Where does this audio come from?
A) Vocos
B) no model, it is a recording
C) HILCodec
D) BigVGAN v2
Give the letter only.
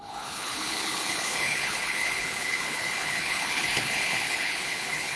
C